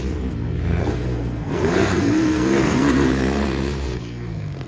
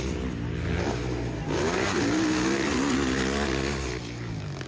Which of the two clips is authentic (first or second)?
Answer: second